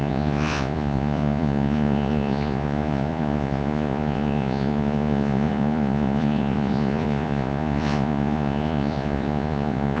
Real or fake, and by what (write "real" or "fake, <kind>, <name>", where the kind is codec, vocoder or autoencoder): fake, vocoder, Vocos